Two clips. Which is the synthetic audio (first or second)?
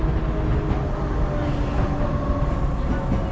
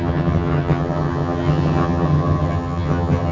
second